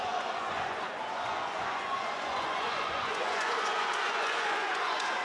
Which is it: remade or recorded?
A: remade